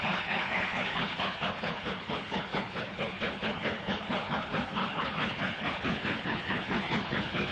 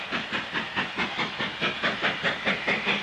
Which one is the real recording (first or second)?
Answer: second